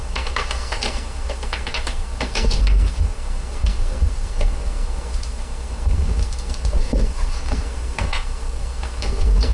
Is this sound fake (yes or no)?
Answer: yes